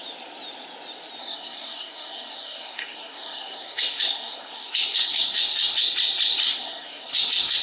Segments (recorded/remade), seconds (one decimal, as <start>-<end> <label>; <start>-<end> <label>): 0.0-1.2 recorded; 1.2-5.8 remade; 5.8-6.4 recorded; 6.4-7.6 remade